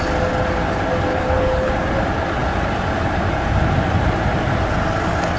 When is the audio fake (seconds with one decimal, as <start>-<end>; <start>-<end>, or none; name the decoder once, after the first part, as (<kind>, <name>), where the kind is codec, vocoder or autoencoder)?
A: 1.1-1.7 (codec, HILCodec)